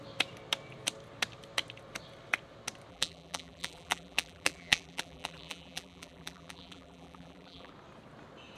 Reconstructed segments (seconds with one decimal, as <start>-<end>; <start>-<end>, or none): 2.9-7.7